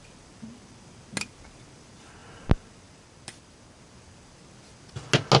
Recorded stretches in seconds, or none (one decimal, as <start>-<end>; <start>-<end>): 0.0-5.4